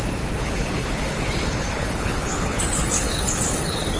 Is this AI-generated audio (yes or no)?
yes